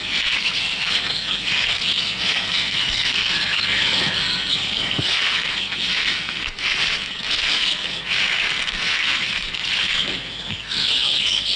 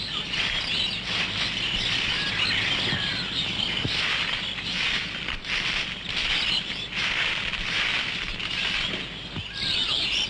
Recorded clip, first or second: second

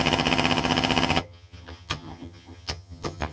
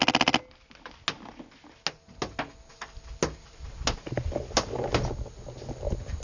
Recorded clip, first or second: second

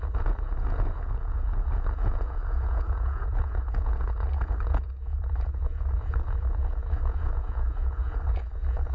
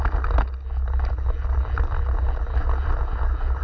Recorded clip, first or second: second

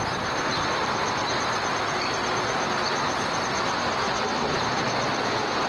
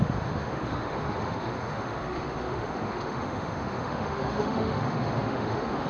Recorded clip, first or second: first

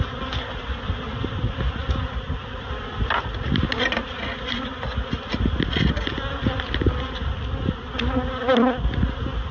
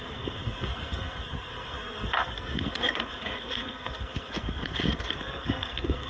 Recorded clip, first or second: first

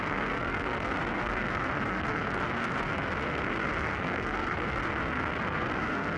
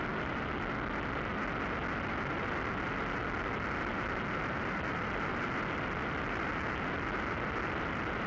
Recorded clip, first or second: second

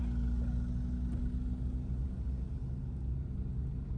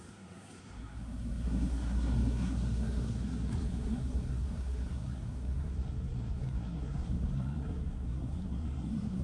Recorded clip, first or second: first